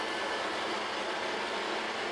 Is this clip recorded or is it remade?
remade